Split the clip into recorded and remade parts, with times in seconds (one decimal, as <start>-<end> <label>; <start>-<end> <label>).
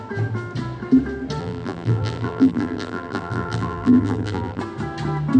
0.0-1.4 recorded; 1.4-4.6 remade; 4.6-5.4 recorded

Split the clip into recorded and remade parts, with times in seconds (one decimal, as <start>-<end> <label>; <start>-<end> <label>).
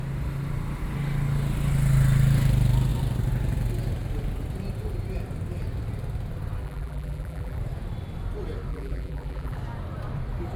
0.0-6.6 recorded; 6.6-7.6 remade; 7.6-8.7 recorded; 8.7-9.6 remade; 9.6-10.6 recorded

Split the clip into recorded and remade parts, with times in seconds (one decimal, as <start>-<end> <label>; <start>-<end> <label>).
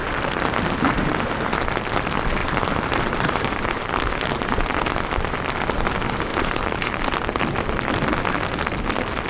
0.0-2.4 recorded; 2.4-3.9 remade; 3.9-6.3 recorded; 6.3-7.0 remade; 7.0-9.3 recorded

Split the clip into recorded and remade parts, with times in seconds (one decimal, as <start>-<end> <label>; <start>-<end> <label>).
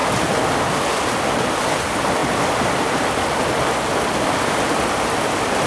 0.0-2.2 recorded; 2.2-5.0 remade; 5.0-5.7 recorded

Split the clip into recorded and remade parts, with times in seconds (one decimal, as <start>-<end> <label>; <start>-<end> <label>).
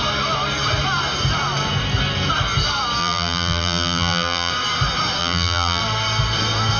0.0-3.0 recorded; 3.0-4.5 remade; 4.5-5.2 recorded; 5.2-5.8 remade; 5.8-6.8 recorded